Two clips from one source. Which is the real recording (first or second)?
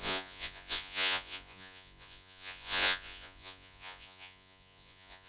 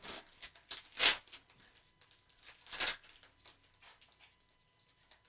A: second